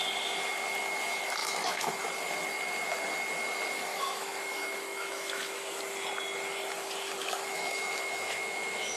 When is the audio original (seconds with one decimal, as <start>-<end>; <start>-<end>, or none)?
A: 0.0-1.4; 2.0-3.9; 5.8-7.2